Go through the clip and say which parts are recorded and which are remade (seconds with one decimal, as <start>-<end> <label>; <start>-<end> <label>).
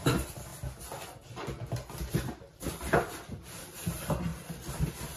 0.0-0.5 remade; 0.5-2.1 recorded; 2.1-5.2 remade